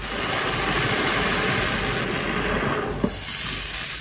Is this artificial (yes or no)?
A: no